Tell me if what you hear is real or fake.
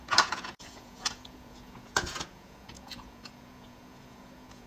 fake